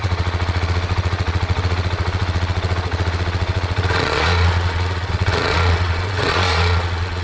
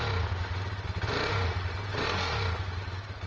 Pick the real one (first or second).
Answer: second